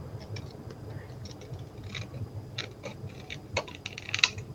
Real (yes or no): yes